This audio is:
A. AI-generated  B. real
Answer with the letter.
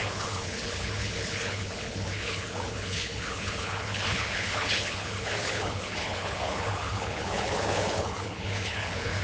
A